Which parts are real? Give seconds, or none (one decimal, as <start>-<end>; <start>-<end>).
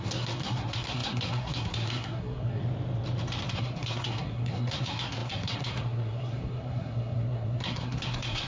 2.6-3.5